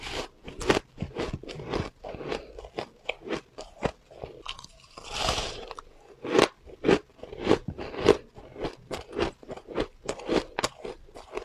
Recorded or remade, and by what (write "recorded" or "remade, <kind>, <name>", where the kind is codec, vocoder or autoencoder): recorded